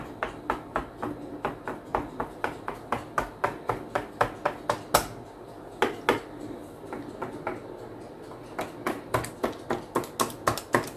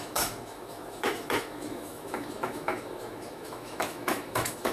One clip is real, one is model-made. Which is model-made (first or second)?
second